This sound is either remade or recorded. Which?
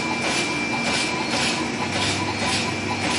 recorded